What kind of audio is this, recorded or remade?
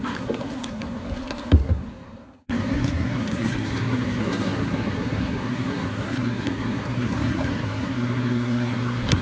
remade